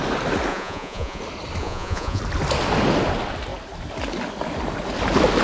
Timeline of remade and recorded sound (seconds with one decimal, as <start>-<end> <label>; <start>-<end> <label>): 0.0-0.5 recorded; 0.5-1.2 remade; 1.2-1.6 recorded; 1.6-2.2 remade; 2.2-5.4 recorded